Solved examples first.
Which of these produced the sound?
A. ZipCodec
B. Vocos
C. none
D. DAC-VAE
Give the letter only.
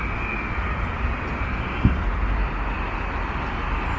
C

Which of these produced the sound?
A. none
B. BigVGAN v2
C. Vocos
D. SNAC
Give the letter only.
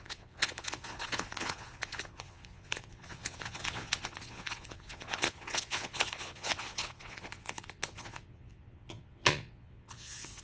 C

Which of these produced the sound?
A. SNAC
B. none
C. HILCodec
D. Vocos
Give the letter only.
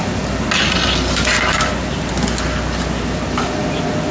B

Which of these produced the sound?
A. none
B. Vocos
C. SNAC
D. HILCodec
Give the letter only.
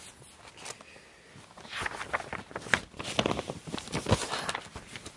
A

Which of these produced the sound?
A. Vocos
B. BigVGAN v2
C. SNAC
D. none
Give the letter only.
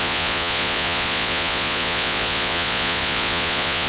A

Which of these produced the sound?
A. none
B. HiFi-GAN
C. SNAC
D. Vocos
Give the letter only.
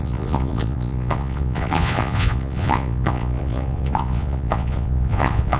D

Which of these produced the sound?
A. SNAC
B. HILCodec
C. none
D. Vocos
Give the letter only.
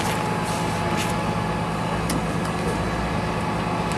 C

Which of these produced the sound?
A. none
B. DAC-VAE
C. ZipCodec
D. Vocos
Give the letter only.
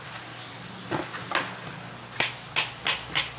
A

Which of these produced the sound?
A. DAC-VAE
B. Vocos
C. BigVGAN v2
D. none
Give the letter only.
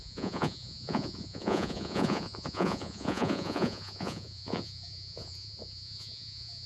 B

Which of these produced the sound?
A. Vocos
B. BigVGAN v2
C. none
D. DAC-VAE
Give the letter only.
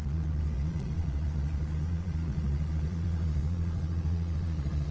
A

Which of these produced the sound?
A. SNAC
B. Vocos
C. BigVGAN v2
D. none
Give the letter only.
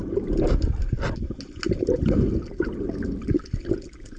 D